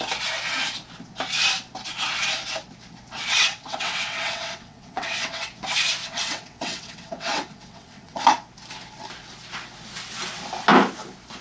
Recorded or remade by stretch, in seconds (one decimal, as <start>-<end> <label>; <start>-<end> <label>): 0.0-3.2 recorded; 3.2-5.5 remade; 5.5-6.0 recorded; 6.0-8.2 remade; 8.2-11.4 recorded